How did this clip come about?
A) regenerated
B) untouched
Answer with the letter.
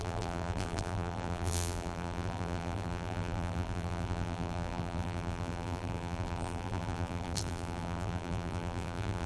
A